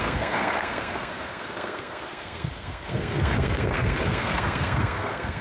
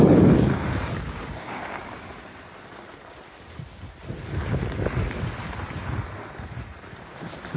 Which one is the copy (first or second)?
first